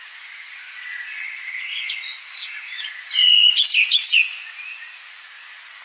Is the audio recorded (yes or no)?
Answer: no